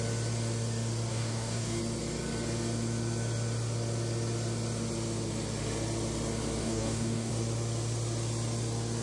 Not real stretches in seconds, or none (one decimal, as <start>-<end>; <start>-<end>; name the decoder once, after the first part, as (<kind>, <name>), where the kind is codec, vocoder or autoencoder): 1.1-1.8 (codec, DAC); 6.6-7.3